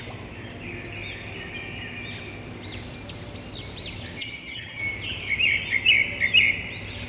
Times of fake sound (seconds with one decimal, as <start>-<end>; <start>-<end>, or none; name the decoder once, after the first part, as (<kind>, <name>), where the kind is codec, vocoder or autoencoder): 4.2-4.8 (vocoder, HiFi-GAN)